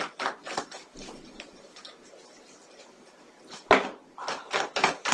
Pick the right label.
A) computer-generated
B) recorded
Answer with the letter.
B